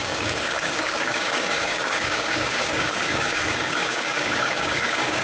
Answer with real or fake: fake